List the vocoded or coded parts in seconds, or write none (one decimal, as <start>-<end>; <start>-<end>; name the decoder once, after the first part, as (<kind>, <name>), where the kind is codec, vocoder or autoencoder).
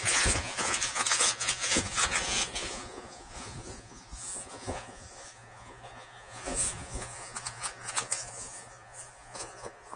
0.0-10.0 (vocoder, Vocos)